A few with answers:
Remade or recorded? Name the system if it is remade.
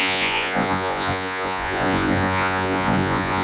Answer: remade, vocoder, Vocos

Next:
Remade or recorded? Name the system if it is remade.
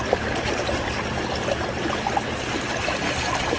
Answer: recorded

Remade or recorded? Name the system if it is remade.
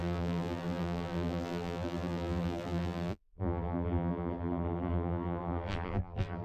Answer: remade, vocoder, BigVGAN v2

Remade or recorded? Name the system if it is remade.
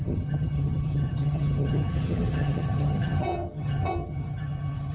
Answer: remade, vocoder, HiFi-GAN